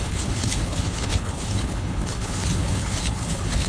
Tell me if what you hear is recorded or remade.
remade